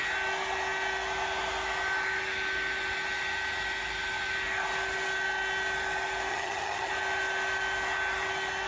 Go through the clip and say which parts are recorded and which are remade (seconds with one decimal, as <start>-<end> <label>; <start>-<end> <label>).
0.0-6.3 recorded; 6.3-6.9 remade; 6.9-8.7 recorded